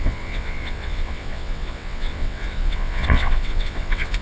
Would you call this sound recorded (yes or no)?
no